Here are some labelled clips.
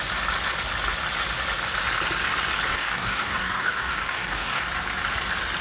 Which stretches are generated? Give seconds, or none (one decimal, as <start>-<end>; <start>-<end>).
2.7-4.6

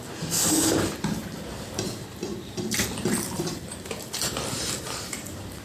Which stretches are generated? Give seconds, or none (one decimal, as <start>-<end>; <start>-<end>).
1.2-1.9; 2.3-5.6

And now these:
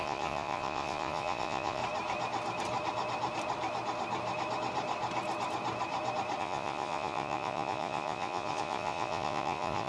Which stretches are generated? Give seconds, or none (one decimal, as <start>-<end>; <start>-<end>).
0.0-1.8; 6.4-9.9

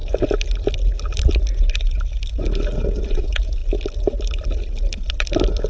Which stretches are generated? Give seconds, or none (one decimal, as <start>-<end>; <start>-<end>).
3.1-3.6

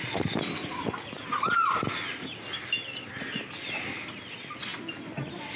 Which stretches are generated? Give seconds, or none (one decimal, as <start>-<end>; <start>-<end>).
none

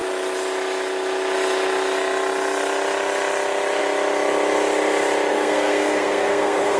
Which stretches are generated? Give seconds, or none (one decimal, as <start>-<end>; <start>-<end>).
5.3-6.8